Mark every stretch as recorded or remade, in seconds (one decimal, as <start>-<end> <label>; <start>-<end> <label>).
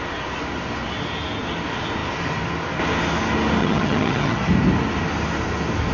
0.0-3.6 recorded; 3.6-4.5 remade; 4.5-5.9 recorded